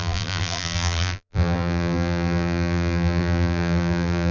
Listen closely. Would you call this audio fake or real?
fake